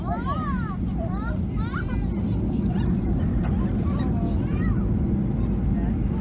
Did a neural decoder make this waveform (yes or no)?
no